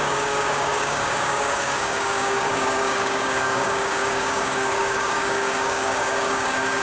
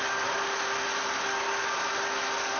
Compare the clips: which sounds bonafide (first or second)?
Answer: second